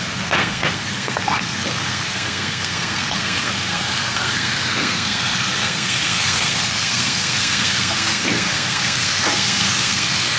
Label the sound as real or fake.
fake